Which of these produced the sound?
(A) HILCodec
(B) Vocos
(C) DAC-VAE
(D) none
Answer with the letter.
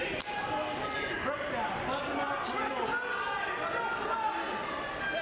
D